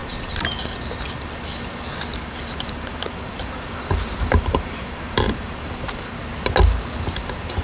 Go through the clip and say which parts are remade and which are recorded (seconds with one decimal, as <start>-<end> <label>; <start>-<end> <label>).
0.0-2.1 recorded; 2.1-6.2 remade; 6.2-7.6 recorded